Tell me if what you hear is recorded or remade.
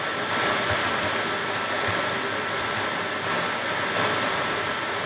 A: recorded